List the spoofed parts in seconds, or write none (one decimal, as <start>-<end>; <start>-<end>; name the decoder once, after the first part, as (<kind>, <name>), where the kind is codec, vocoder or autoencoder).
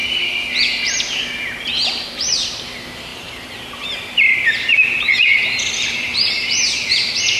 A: 1.6-7.4 (vocoder, BigVGAN v2)